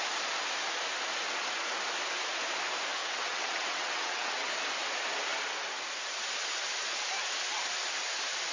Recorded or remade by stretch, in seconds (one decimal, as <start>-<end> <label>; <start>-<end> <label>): 0.0-3.0 recorded; 3.0-4.5 remade; 4.5-8.5 recorded